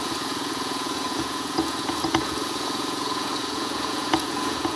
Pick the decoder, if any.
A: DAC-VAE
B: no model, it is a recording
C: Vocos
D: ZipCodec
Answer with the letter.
C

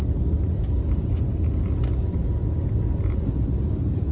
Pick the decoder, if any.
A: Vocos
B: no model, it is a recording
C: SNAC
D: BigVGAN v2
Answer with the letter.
B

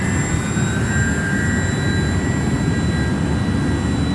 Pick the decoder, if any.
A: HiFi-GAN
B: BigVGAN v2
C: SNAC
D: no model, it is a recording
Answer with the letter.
D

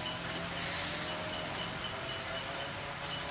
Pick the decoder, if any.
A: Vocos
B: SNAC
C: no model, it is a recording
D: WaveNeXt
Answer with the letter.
C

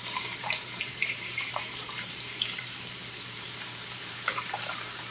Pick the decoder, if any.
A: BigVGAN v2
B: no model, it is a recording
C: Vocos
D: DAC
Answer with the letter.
A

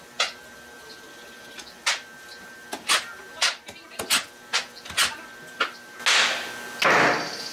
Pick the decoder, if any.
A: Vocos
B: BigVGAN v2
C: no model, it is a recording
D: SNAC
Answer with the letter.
C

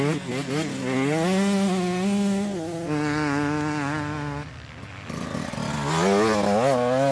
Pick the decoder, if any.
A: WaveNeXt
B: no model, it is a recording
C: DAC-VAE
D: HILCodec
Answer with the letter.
B